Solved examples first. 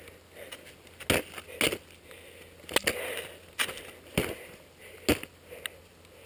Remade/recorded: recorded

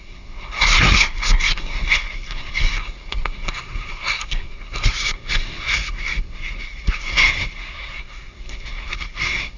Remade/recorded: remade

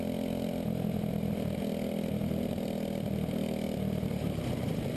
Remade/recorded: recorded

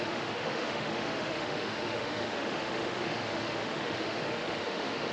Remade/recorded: remade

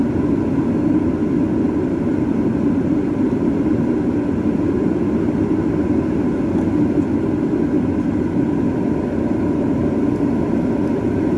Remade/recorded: recorded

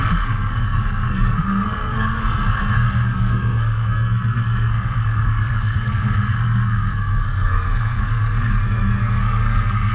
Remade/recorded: remade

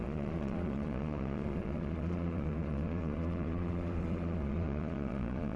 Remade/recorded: remade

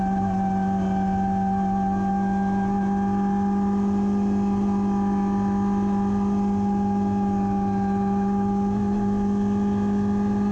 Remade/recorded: recorded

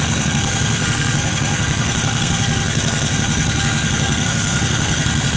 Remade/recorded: remade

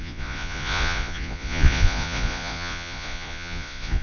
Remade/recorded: remade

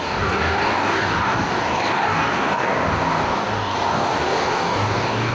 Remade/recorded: remade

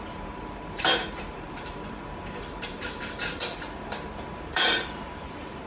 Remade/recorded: remade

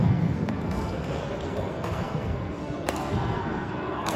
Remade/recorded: remade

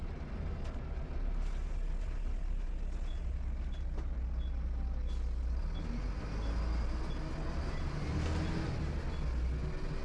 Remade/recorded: recorded